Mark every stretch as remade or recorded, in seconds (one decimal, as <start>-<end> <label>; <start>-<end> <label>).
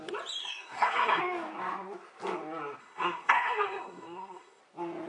0.0-0.4 recorded; 0.4-1.2 remade; 1.2-2.8 recorded; 2.8-4.6 remade; 4.6-5.1 recorded